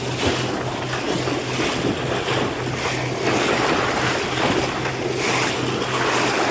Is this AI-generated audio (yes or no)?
no